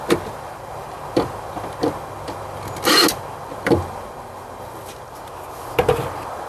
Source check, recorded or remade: recorded